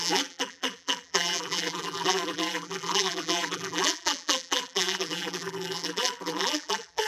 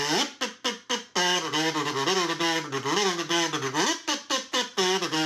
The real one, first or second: second